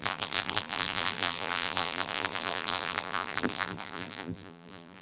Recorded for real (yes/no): no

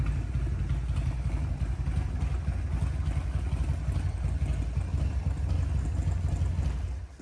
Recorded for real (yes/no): yes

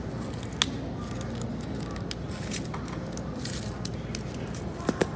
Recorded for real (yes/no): yes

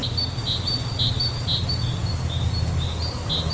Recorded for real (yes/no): yes